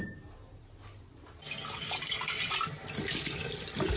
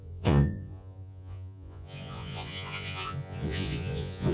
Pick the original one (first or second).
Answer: first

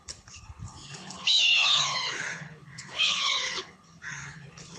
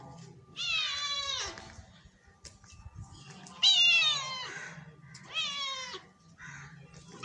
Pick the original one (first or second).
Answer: second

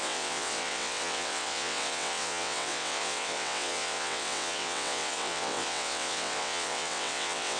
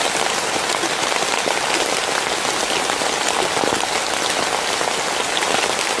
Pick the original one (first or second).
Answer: second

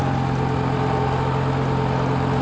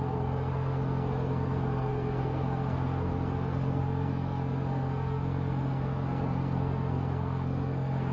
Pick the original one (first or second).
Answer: first